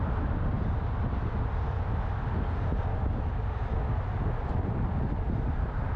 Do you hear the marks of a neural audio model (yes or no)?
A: no